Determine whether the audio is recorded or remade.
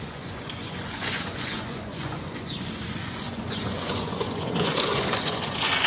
remade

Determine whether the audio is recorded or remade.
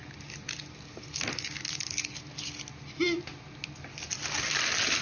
recorded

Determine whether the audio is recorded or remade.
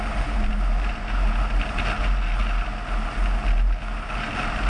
recorded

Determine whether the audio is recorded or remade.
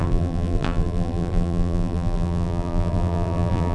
remade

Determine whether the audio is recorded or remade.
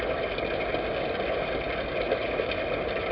recorded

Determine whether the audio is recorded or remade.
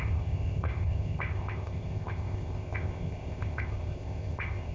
remade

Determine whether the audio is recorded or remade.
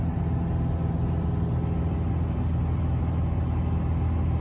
recorded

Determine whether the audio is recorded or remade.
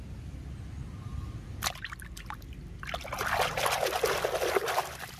recorded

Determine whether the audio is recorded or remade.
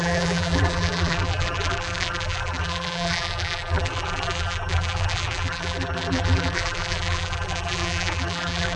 remade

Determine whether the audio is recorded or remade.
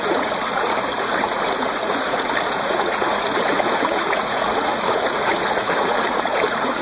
remade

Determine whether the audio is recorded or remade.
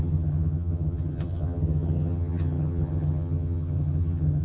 remade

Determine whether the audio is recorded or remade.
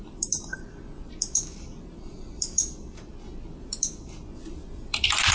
remade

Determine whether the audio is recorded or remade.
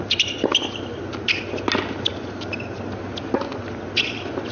recorded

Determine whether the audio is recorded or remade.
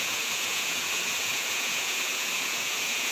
remade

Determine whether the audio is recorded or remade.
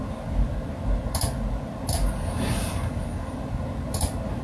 recorded